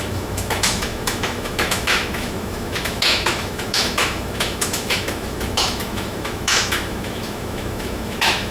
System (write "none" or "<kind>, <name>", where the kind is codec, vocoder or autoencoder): autoencoder, DAC-VAE